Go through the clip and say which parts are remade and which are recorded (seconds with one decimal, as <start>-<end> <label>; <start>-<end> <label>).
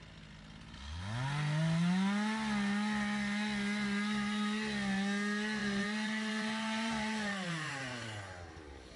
0.0-5.6 recorded; 5.6-7.7 remade; 7.7-9.0 recorded